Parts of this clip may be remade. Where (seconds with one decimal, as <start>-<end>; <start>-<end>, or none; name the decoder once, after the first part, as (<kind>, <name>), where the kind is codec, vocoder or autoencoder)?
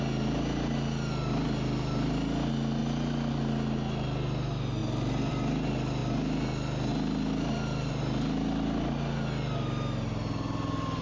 none